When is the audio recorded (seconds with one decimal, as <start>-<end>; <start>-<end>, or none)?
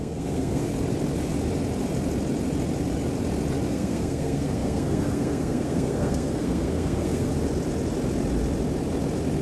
0.7-3.7; 7.3-9.4